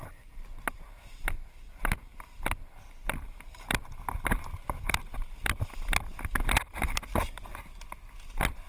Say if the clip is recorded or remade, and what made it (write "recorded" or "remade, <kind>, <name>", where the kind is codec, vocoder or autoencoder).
recorded